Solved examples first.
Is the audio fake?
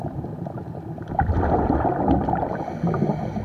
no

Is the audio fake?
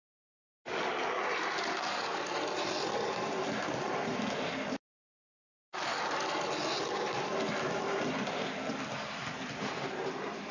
yes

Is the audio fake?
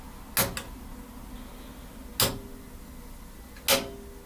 no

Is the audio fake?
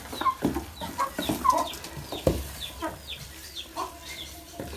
no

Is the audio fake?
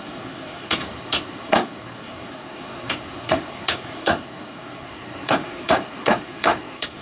yes